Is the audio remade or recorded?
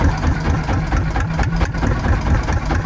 remade